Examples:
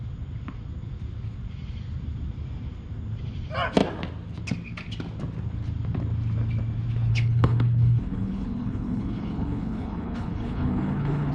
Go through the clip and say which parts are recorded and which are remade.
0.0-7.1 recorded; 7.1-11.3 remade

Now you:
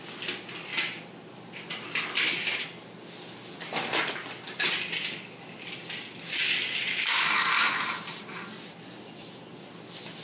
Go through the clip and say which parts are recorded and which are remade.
0.0-10.2 recorded